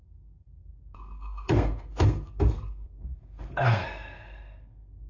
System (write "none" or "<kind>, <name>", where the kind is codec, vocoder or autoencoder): codec, SNAC